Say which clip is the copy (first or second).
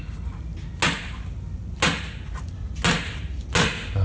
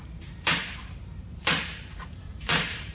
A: second